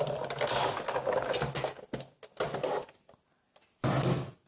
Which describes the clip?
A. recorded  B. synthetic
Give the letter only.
A